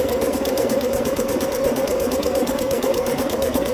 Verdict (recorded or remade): remade